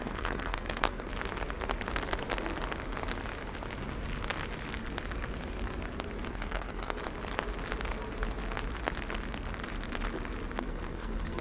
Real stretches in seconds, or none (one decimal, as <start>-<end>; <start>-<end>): 1.1-6.3; 7.0-10.6

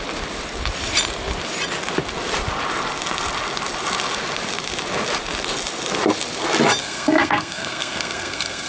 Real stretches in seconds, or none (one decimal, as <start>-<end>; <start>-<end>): 0.0-6.8

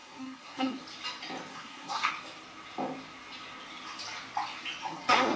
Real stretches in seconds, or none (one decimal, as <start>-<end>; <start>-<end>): 0.8-1.5; 2.1-4.8